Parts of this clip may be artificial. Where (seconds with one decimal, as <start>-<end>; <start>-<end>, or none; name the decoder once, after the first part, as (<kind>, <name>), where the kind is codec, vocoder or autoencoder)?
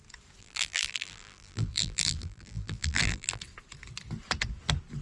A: 0.4-3.4 (vocoder, BigVGAN v2)